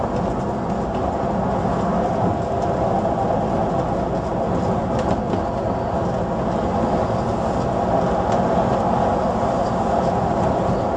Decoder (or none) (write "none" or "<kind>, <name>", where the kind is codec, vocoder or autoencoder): none